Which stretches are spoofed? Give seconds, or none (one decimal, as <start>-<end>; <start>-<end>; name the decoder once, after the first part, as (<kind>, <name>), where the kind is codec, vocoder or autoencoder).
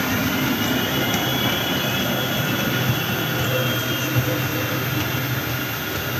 none